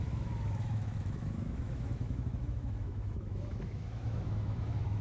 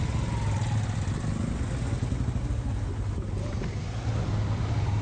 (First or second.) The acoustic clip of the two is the second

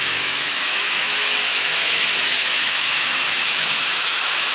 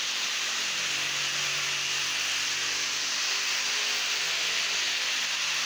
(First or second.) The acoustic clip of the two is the second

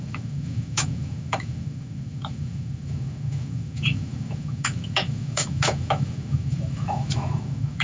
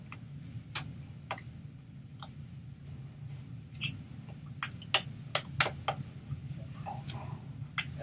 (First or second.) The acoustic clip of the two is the second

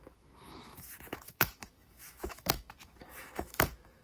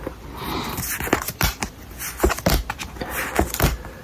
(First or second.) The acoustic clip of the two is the second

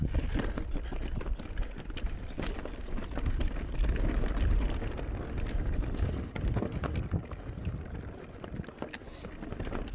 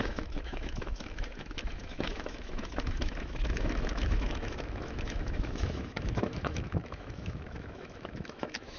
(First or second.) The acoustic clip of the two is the first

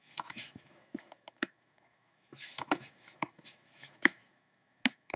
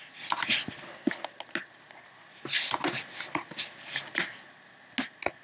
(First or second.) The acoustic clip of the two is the second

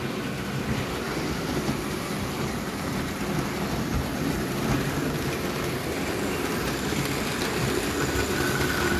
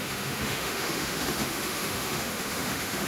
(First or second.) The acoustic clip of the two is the first